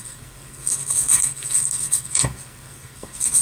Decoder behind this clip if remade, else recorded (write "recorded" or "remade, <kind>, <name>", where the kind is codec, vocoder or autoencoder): remade, codec, SNAC